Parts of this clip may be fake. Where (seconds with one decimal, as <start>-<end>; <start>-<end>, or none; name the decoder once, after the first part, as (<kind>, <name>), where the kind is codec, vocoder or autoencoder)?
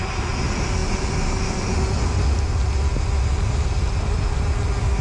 none